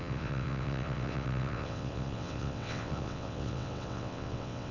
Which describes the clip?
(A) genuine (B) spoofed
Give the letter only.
B